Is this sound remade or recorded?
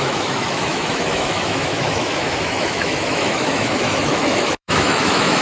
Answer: remade